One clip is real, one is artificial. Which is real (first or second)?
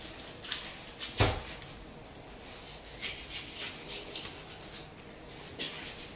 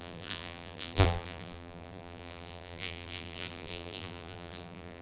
first